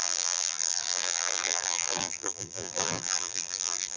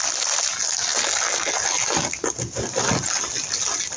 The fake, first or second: first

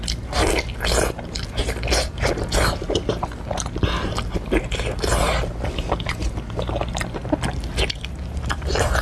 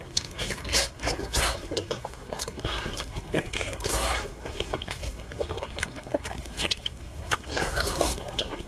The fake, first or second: second